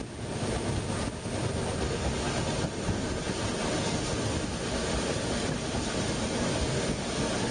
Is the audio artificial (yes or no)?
no